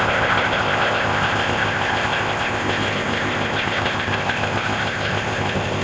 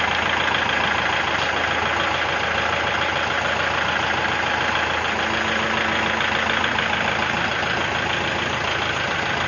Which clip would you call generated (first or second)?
first